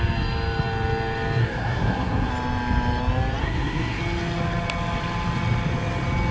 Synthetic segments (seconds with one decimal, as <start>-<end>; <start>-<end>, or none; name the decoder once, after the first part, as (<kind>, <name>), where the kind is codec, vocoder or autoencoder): 1.4-2.3 (codec, SNAC); 3.4-4.0